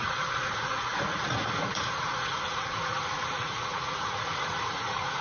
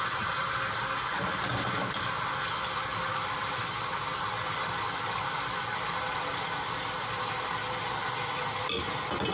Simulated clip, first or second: first